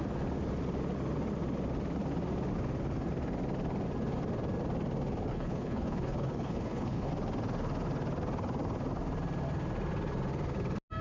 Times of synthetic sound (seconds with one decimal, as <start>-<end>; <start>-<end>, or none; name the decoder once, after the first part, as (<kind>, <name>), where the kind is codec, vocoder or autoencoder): 5.3-7.1 (codec, HILCodec)